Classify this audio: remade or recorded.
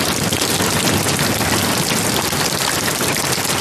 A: recorded